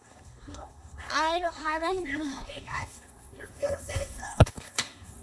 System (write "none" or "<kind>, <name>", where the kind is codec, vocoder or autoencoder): codec, SNAC